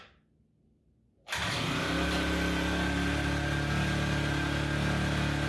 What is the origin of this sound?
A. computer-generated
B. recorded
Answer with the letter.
B